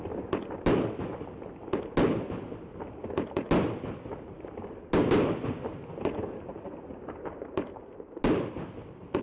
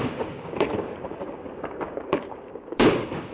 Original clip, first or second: first